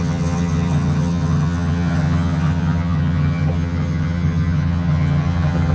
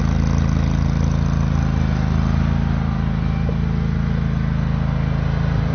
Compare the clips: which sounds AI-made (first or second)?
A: first